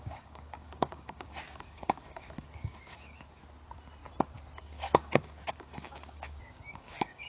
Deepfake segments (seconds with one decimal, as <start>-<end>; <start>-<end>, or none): 0.0-3.4; 4.6-7.3